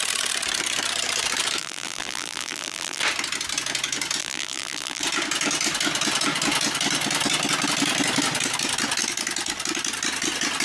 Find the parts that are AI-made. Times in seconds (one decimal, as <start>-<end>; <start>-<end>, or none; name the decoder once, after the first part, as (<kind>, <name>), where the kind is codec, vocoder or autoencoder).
1.6-3.0 (vocoder, BigVGAN v2); 4.2-5.0